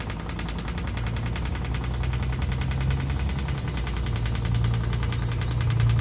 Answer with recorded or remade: recorded